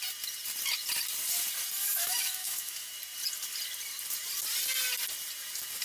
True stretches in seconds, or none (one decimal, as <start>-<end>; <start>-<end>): 0.0-1.8; 2.9-5.8